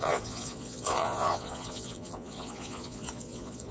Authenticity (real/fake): fake